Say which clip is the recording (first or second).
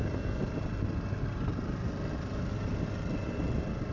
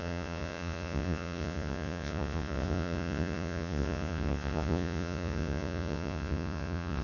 first